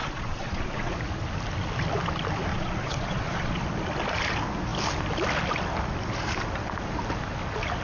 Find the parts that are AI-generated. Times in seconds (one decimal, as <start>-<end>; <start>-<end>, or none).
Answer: 0.0-0.9; 2.5-3.6